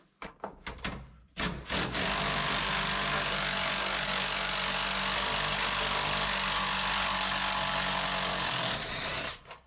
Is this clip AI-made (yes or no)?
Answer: no